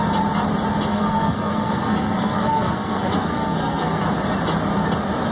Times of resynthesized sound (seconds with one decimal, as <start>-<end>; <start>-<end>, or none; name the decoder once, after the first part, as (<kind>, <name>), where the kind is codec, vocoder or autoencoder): 0.9-4.0 (codec, SNAC)